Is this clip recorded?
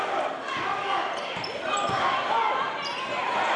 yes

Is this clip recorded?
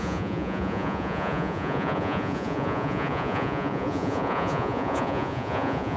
no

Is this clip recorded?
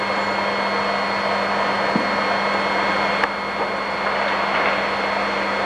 yes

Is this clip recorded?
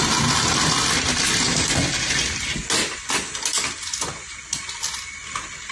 yes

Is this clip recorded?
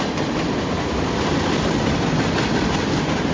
yes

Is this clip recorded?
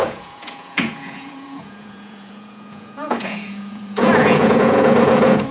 no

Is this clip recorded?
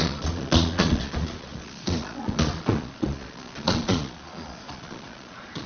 no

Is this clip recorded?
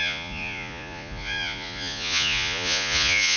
no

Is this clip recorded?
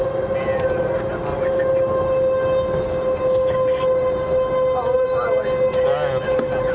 yes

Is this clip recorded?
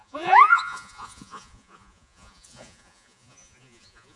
no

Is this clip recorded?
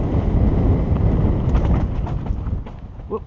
yes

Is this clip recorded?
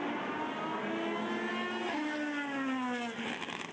yes